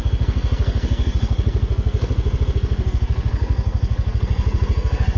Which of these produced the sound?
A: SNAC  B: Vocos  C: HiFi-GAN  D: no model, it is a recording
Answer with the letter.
A